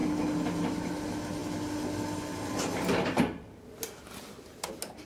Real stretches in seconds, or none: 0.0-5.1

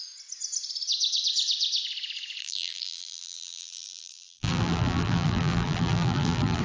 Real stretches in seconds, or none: 0.0-2.4